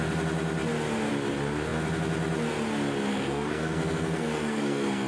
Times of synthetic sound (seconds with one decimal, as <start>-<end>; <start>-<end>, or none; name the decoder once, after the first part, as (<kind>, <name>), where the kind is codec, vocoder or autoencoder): 3.1-5.1 (codec, SNAC)

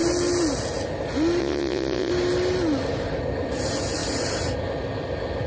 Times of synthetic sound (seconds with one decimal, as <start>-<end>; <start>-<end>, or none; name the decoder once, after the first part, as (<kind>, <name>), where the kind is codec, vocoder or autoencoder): 1.4-2.1 (vocoder, Vocos)

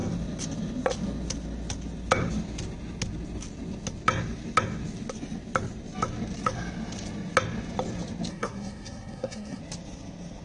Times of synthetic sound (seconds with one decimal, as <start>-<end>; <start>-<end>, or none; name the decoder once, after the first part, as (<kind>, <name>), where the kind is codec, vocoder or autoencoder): 8.3-9.6 (codec, SNAC)

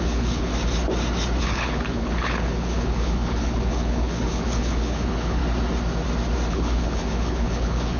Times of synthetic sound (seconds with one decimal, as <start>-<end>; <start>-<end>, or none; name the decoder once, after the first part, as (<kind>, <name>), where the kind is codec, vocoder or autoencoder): 0.0-0.5 (codec, HILCodec); 1.4-5.4; 6.5-8.0

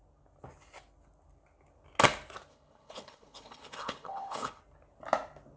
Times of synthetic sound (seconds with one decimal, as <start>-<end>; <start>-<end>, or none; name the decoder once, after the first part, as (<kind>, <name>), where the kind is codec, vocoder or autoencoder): 2.5-4.6 (codec, HILCodec)